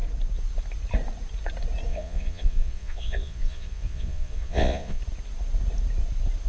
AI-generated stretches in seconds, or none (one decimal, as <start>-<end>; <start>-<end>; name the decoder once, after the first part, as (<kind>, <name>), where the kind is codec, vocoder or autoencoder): 1.9-5.0 (vocoder, Vocos)